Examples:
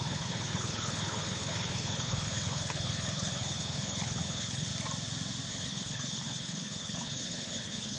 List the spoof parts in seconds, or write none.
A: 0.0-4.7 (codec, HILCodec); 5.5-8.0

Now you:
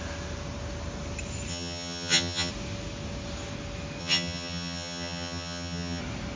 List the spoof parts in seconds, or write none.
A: 1.5-2.5 (vocoder, HiFi-GAN); 4.0-6.0

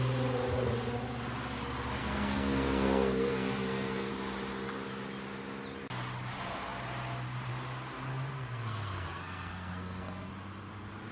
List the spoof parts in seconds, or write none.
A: 2.0-4.1 (codec, SNAC); 8.1-10.3

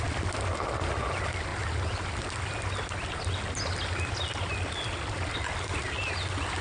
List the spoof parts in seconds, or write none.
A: none

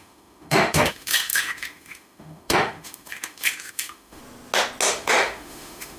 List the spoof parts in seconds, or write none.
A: 0.0-4.2 (autoencoder, DAC-VAE); 4.9-6.0

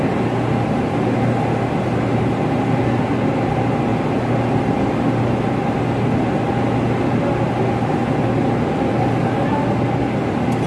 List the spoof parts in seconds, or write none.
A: none

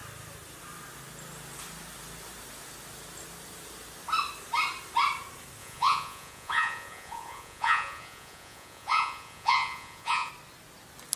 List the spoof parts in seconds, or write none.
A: 5.6-10.3 (vocoder, Vocos)